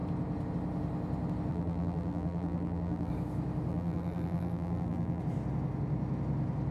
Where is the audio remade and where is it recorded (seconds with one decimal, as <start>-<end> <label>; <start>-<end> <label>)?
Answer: 0.0-1.5 recorded; 1.5-3.1 remade; 3.1-3.7 recorded; 3.7-5.2 remade; 5.2-6.7 recorded